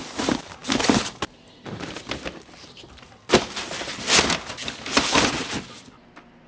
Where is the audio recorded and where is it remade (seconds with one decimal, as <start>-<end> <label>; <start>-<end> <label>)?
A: 0.0-6.5 recorded

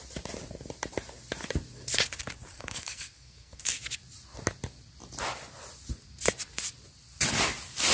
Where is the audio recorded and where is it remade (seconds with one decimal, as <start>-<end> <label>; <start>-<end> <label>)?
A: 0.0-2.5 recorded; 2.5-3.8 remade; 3.8-7.9 recorded

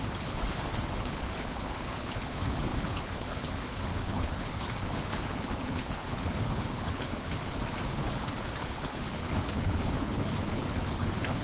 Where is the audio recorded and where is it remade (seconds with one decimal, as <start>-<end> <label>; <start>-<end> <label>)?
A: 0.0-11.4 remade

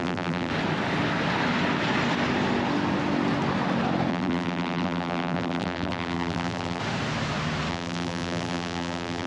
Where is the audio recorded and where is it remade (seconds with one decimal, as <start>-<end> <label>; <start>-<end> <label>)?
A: 0.0-0.5 remade; 0.5-4.1 recorded; 4.1-6.8 remade; 6.8-7.7 recorded; 7.7-9.3 remade

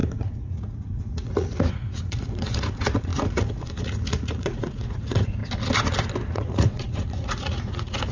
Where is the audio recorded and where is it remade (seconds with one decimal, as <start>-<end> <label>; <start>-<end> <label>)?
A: 0.0-5.4 remade; 5.4-6.3 recorded; 6.3-8.1 remade

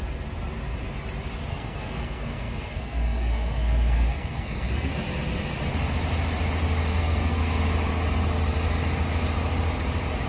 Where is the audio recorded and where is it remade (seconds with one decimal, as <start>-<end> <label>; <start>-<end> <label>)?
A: 0.0-1.5 recorded; 1.5-4.9 remade; 4.9-6.9 recorded; 6.9-7.6 remade; 7.6-10.3 recorded

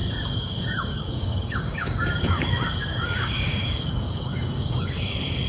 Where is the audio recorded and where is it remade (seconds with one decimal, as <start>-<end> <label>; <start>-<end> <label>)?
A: 0.0-5.5 remade

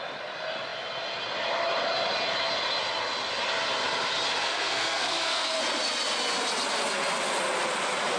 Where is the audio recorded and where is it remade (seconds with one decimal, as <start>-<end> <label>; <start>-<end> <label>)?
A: 0.0-4.4 recorded; 4.4-5.6 remade; 5.6-8.2 recorded